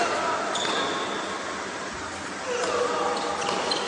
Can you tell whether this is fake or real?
real